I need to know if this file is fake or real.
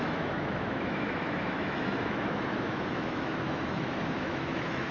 fake